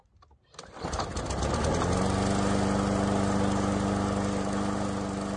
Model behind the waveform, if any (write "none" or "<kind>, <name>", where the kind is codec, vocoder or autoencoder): none